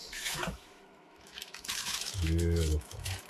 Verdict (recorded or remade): remade